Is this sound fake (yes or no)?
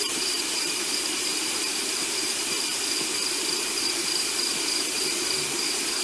yes